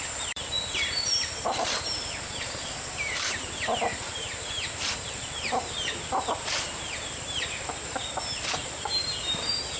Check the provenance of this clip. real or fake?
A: fake